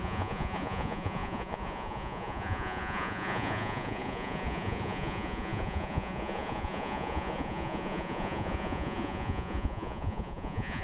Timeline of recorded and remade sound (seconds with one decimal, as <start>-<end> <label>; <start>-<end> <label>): 0.0-10.8 remade